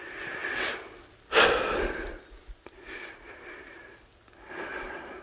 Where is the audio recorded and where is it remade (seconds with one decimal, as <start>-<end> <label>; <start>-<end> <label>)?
0.0-5.2 recorded

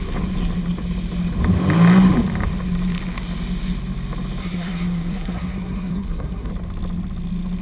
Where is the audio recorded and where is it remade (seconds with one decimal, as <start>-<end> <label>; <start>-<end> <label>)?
0.0-4.4 recorded; 4.4-6.5 remade; 6.5-7.6 recorded